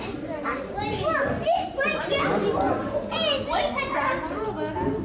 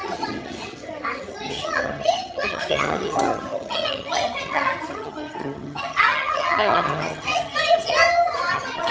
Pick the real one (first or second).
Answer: first